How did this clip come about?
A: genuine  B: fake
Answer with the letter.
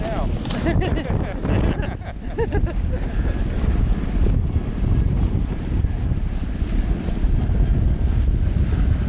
A